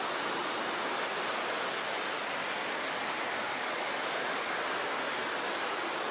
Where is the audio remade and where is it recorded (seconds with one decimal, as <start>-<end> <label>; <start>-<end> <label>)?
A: 0.0-6.1 recorded